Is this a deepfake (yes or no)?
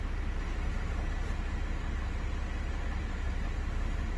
no